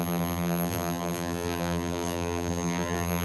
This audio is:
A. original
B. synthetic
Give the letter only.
B